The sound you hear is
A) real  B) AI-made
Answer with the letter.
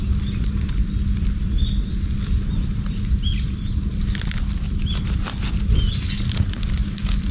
A